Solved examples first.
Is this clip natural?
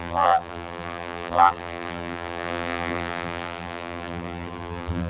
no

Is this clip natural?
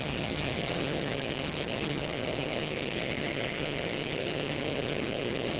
no